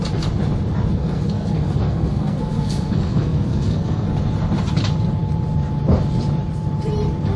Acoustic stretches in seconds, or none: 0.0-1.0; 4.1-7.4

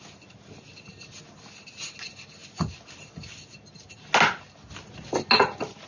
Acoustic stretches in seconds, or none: 0.0-5.9

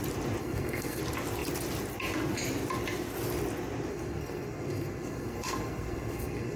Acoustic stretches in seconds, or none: 0.0-0.4; 1.0-3.9

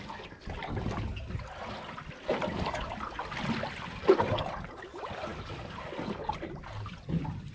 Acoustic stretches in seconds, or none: 0.0-7.5

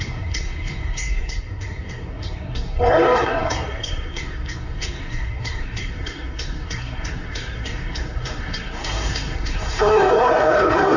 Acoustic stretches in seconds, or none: none

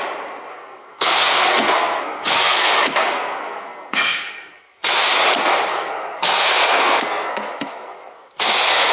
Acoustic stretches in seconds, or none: 0.0-0.5; 5.0-5.7

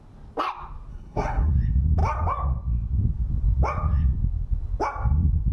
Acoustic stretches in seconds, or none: 0.0-0.9; 1.5-5.5

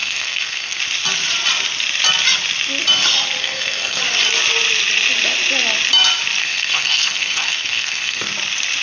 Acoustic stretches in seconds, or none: 0.8-3.4; 4.0-6.4; 8.3-8.8